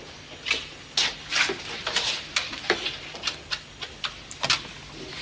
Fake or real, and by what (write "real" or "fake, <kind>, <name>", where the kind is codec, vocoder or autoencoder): real